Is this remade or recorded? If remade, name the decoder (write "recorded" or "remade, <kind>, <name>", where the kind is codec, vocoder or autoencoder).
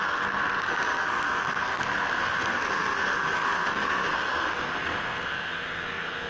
remade, codec, SNAC